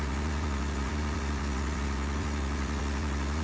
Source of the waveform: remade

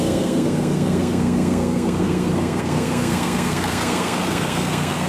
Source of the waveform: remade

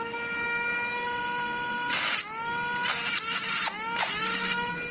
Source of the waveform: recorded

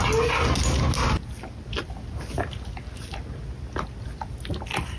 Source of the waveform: recorded